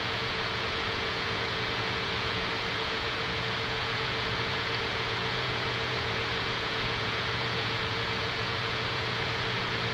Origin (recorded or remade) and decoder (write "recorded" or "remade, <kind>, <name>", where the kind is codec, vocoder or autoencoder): remade, vocoder, Vocos